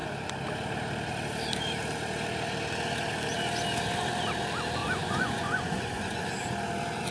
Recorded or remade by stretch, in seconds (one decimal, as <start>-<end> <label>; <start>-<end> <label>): 0.0-4.8 recorded; 4.8-6.2 remade; 6.2-7.1 recorded